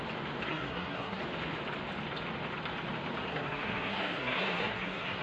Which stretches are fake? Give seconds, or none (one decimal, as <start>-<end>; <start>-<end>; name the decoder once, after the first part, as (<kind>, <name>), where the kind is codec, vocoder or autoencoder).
0.5-1.2 (codec, SNAC); 3.3-5.2